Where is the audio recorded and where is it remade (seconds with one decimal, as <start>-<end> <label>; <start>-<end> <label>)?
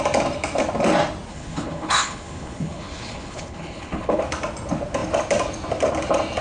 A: 0.0-1.3 recorded; 1.3-4.2 remade; 4.2-6.4 recorded